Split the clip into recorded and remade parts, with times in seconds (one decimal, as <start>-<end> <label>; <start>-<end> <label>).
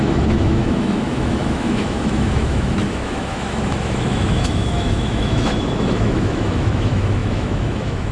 0.0-8.1 remade